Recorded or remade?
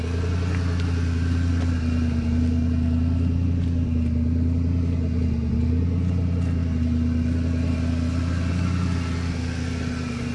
recorded